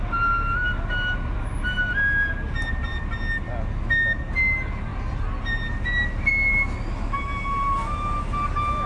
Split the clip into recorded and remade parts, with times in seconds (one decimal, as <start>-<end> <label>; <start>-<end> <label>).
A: 0.0-8.9 recorded